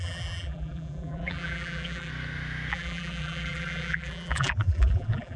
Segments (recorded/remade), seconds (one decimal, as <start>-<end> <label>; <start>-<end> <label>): 0.0-2.1 remade; 2.1-2.7 recorded; 2.7-5.4 remade